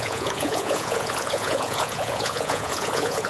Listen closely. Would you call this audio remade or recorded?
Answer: remade